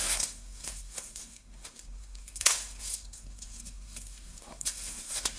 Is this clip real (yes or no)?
no